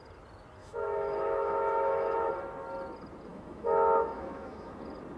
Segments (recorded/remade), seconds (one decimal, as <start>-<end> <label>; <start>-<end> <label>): 0.0-0.6 recorded; 0.6-2.3 remade; 2.3-3.3 recorded; 3.3-4.8 remade; 4.8-5.2 recorded